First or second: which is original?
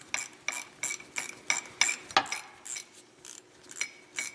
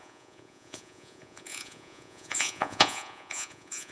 first